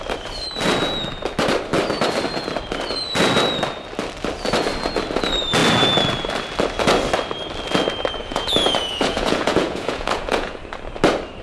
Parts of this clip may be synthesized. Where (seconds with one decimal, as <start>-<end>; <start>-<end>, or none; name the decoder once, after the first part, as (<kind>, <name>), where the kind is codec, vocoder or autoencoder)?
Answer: 8.2-10.6 (vocoder, Vocos)